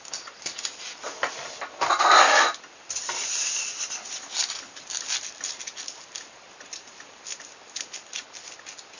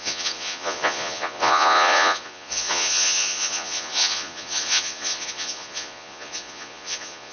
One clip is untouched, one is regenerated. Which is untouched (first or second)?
first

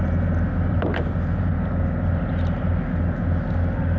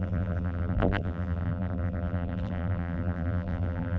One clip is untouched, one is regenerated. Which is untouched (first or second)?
first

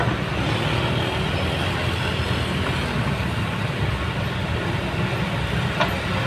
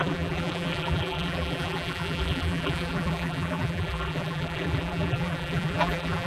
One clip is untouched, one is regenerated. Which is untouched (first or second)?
first